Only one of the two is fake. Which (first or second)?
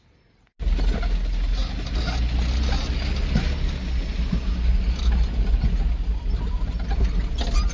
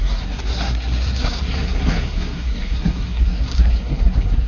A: second